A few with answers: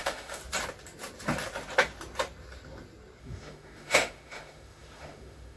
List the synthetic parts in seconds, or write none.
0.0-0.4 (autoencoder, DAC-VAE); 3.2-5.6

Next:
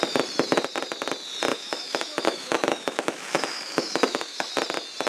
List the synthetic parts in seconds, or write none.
1.5-4.5 (autoencoder, DAC-VAE)

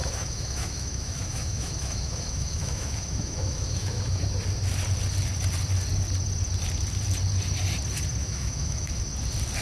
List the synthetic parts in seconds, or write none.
0.0-4.2 (autoencoder, DAC-VAE); 8.2-9.0